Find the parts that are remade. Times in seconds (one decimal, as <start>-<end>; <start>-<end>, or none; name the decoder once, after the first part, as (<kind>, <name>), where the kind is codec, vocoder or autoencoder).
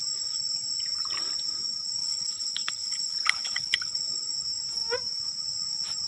2.0-4.0 (codec, HILCodec)